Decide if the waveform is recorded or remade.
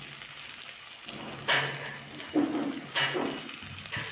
recorded